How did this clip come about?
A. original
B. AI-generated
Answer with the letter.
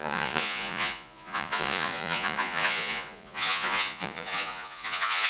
B